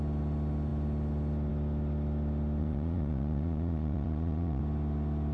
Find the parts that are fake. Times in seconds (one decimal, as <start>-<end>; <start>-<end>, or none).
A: 2.6-4.6